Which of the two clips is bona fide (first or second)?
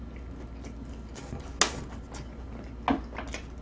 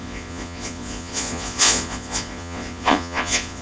first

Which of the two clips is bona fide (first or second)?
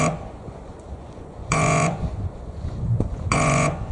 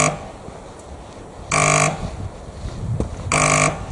second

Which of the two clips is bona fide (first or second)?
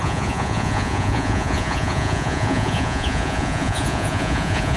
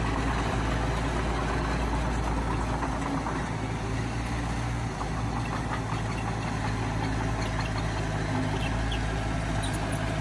second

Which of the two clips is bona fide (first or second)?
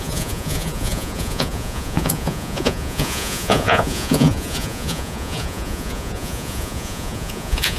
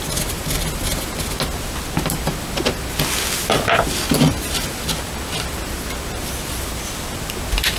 second